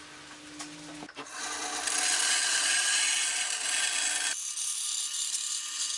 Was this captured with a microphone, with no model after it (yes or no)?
yes